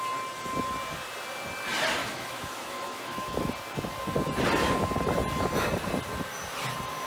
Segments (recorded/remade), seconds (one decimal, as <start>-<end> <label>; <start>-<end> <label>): 0.0-2.0 recorded; 2.0-3.5 remade; 3.5-7.1 recorded